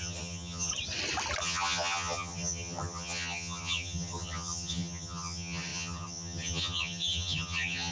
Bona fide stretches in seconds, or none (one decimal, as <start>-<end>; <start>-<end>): 0.7-1.4